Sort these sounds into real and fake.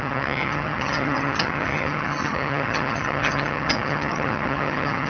fake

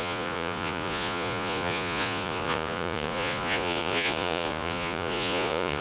fake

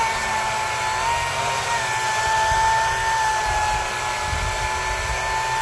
real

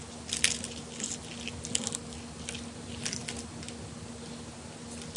real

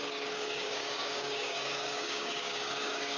fake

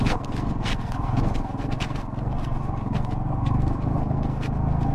fake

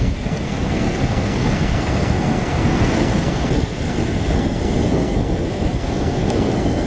fake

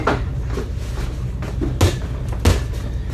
real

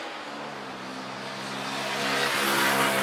real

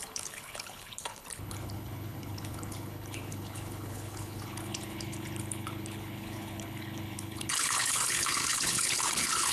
fake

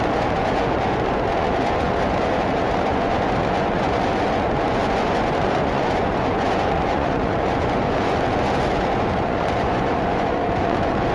fake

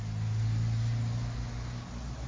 real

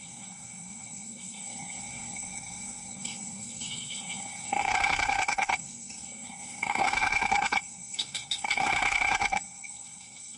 fake